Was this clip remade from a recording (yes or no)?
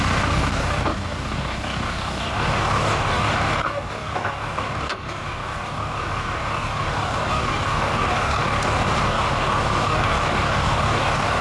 yes